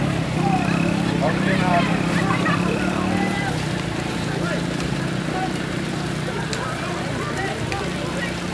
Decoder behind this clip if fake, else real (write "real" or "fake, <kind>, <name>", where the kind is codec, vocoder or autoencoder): fake, vocoder, BigVGAN v2